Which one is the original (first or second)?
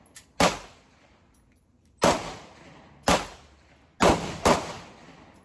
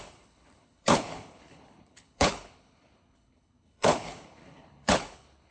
first